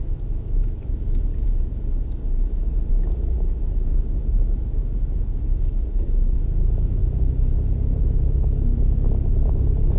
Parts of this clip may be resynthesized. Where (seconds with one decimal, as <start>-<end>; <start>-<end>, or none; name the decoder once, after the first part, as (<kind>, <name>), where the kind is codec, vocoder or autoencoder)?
0.0-1.3 (autoencoder, DAC-VAE); 2.9-7.0; 8.2-10.0